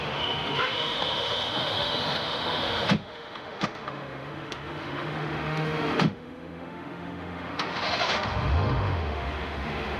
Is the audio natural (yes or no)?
no